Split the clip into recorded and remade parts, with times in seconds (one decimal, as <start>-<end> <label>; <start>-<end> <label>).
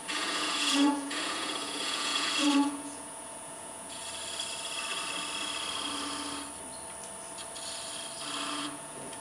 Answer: 0.0-4.0 remade; 4.0-8.5 recorded; 8.5-9.2 remade